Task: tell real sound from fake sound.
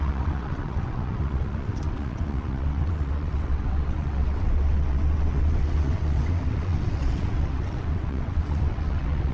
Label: fake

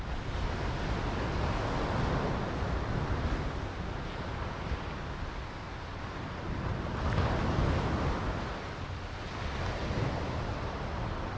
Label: real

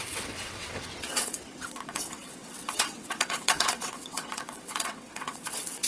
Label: fake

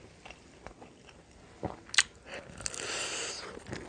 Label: real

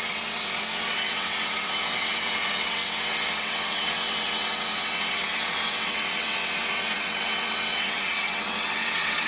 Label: fake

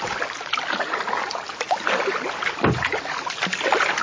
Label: real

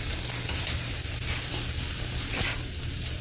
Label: real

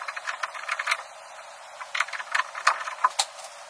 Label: real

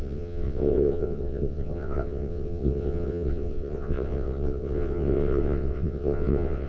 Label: fake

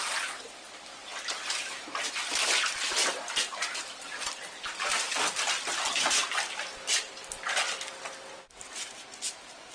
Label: real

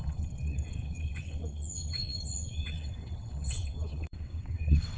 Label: fake